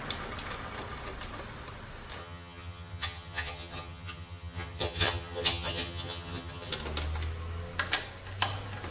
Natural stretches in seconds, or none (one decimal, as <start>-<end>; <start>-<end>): 0.0-2.2; 6.7-8.9